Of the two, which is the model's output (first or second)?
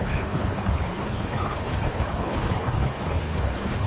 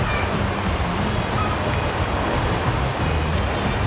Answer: first